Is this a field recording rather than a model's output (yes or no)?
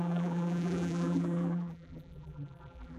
no